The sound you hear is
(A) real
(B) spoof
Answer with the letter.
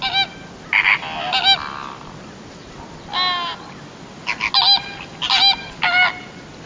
A